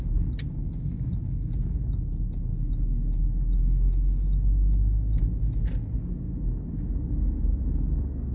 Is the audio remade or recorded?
recorded